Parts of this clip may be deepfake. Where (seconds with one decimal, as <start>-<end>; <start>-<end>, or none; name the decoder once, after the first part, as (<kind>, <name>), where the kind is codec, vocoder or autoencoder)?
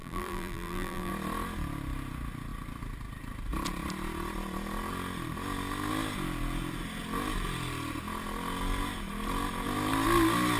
0.0-1.1 (vocoder, BigVGAN v2)